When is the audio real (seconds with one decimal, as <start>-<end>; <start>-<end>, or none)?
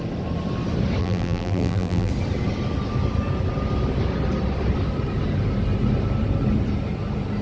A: 0.0-1.0; 2.1-7.4